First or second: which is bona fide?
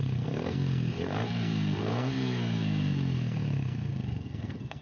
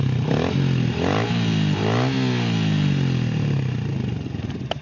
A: second